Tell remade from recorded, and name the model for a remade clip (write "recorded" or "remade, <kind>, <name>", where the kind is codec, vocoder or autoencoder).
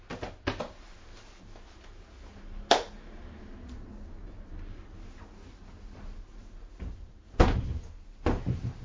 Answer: recorded